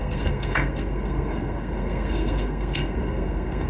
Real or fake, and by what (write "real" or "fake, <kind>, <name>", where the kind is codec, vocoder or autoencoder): fake, codec, SNAC